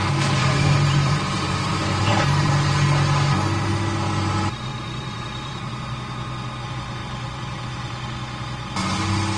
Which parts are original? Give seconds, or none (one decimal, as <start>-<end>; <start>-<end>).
0.0-0.4; 2.5-4.7; 5.7-7.0; 7.6-9.4